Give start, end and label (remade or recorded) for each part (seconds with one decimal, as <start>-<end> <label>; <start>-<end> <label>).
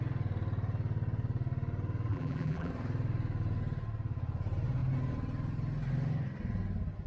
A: 0.0-2.1 recorded; 2.1-2.7 remade; 2.7-7.1 recorded